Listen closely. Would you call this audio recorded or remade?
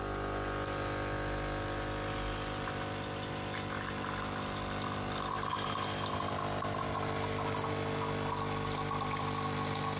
recorded